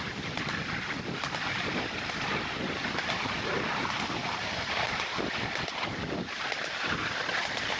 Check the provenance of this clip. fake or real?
real